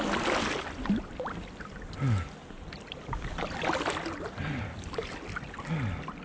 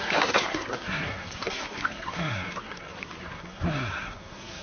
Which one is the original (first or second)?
first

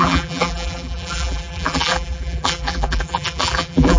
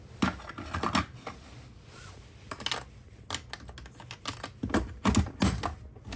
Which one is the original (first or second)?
second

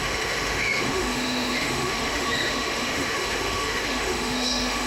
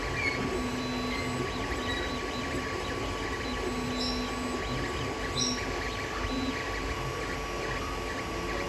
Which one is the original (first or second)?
second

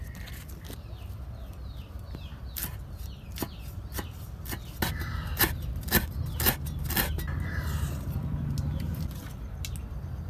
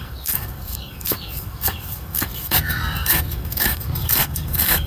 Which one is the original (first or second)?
first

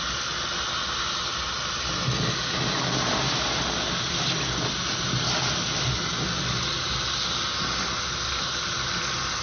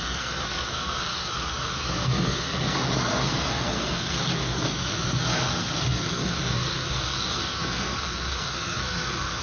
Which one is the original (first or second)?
first